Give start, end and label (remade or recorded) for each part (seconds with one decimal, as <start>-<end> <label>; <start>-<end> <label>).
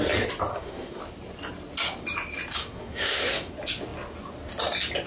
0.0-0.5 recorded; 0.5-1.0 remade; 1.0-2.6 recorded; 2.6-3.5 remade; 3.5-5.1 recorded